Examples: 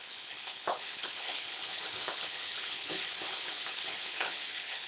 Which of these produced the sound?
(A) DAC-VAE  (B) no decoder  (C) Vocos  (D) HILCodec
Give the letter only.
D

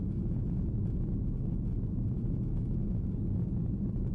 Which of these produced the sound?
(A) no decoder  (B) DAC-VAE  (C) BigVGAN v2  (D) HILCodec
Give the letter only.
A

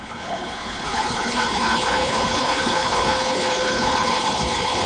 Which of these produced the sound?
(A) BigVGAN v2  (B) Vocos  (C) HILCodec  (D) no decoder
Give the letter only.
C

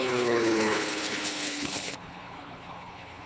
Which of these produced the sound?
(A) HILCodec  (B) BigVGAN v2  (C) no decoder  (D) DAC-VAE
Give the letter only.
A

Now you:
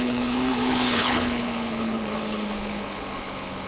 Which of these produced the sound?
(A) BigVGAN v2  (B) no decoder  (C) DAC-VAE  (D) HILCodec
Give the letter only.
D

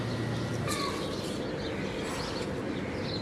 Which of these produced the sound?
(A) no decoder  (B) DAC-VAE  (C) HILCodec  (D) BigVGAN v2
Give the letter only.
A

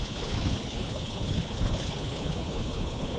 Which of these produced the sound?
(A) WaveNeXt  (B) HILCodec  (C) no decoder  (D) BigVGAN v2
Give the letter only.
B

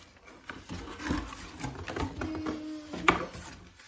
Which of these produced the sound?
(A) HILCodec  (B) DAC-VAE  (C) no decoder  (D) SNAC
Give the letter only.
C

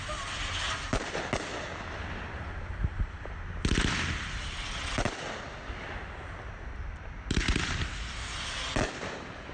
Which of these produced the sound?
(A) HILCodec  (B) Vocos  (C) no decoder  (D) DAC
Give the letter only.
C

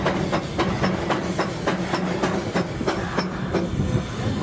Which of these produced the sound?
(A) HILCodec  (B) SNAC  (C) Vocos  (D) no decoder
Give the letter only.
D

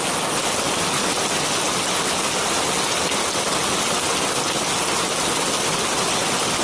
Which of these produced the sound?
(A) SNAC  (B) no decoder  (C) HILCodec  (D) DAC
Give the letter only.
B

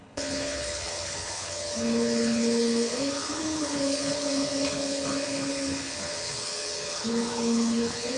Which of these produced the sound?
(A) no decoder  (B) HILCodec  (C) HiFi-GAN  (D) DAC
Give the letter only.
B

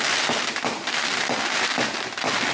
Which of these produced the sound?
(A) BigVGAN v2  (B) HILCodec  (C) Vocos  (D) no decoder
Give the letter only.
D